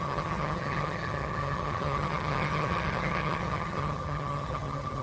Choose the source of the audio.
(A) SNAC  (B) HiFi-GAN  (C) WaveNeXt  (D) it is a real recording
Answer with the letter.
B